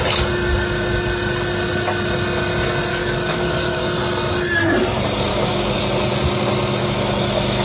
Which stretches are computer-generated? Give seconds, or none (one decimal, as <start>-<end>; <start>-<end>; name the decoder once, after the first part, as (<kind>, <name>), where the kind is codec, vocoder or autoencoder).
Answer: 2.9-3.8 (codec, DAC); 5.3-5.8